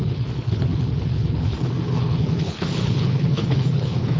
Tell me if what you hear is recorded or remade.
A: remade